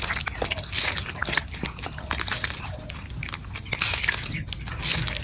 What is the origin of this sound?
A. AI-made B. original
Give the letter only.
B